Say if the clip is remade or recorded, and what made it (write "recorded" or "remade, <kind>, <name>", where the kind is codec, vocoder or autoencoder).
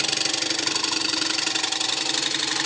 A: recorded